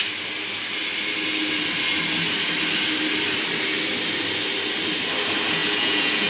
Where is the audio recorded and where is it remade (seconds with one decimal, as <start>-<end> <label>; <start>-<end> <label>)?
0.0-5.6 recorded; 5.6-6.3 remade